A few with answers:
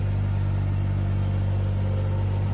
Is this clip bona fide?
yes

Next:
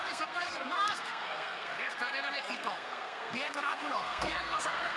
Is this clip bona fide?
no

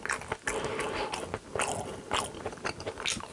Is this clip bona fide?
yes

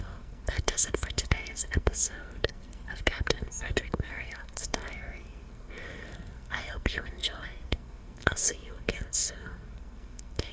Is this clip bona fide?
no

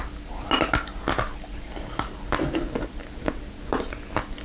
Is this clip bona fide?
yes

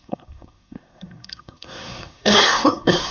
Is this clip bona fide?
no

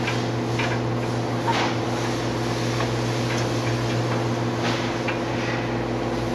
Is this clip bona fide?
yes